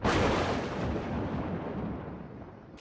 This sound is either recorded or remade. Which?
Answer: recorded